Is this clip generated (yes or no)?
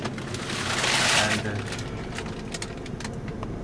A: no